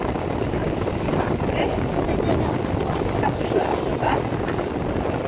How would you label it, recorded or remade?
recorded